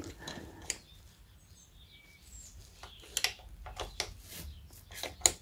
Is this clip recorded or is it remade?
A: recorded